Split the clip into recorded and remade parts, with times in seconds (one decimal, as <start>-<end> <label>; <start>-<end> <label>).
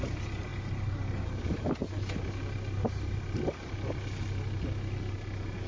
0.0-5.7 recorded